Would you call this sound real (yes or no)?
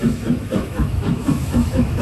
no